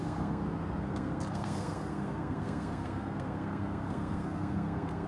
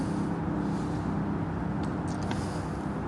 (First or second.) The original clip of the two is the second